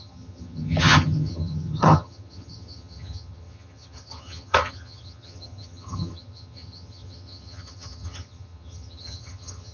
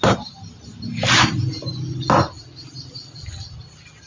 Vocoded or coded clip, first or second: first